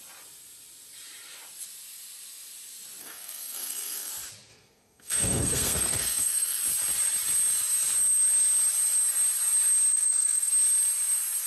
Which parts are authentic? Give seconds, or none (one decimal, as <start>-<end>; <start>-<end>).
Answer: 0.0-3.0; 4.1-4.5; 6.6-9.9; 10.5-11.5